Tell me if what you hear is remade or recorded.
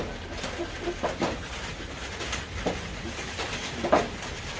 recorded